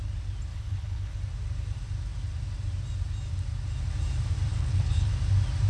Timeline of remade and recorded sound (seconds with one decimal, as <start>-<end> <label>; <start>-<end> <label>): 0.0-0.5 recorded; 0.5-1.2 remade; 1.2-4.5 recorded; 4.5-5.1 remade; 5.1-5.7 recorded